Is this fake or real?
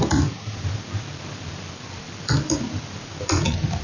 real